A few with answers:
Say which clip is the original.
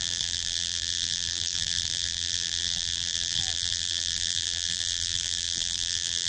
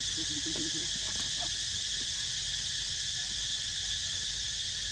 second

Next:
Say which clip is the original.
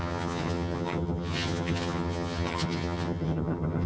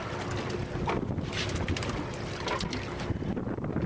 second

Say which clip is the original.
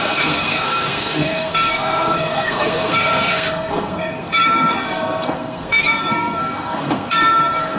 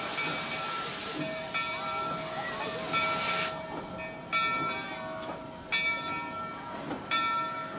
second